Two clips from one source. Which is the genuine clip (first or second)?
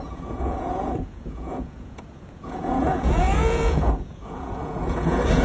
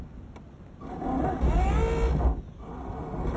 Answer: second